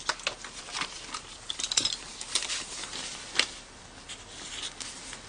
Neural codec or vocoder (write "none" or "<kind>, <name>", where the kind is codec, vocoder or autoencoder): none